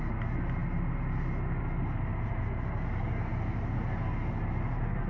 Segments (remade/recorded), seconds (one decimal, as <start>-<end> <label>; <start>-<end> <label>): 0.0-5.1 recorded